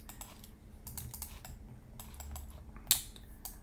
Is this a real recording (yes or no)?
yes